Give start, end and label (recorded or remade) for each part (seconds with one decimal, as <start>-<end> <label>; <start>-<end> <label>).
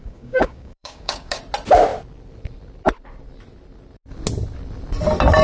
0.0-1.4 remade; 1.4-5.4 recorded